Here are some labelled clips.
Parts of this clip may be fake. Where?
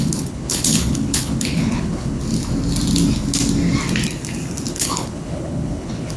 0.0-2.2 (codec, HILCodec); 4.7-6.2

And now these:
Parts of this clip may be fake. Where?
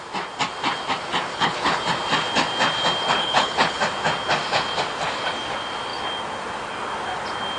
1.3-1.8 (codec, HILCodec); 3.2-3.8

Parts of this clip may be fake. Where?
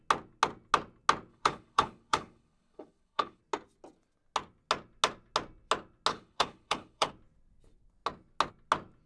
1.3-3.4 (codec, HILCodec); 6.1-7.1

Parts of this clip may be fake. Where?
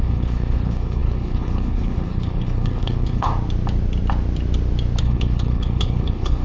0.0-3.3 (codec, HILCodec); 5.0-6.4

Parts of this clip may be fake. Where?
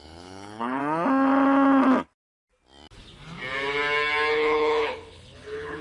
0.0-0.8 (codec, HILCodec); 4.3-5.8